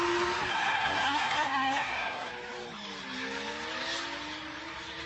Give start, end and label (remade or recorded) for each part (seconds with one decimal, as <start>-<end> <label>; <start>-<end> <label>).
0.0-0.5 recorded; 0.5-2.3 remade; 2.3-5.1 recorded